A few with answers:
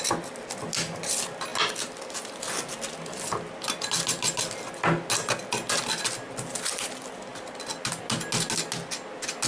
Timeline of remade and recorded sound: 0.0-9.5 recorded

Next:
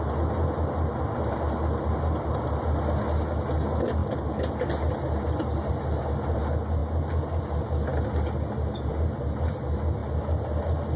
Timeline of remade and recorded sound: 0.0-11.0 recorded

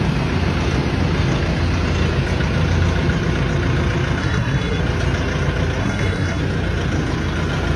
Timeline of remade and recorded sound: 0.0-4.2 recorded; 4.2-4.8 remade; 4.8-5.8 recorded; 5.8-6.4 remade; 6.4-7.8 recorded

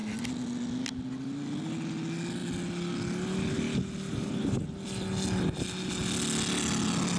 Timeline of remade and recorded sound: 0.0-7.2 recorded

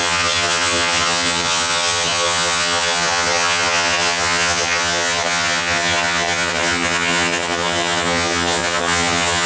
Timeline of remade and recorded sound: 0.0-9.5 remade

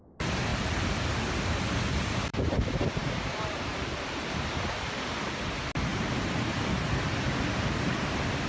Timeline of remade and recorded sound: 0.0-2.3 recorded; 2.3-4.0 remade; 4.0-5.9 recorded; 5.9-6.5 remade; 6.5-8.5 recorded

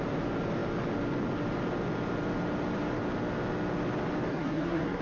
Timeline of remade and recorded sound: 0.0-4.3 recorded; 4.3-5.0 remade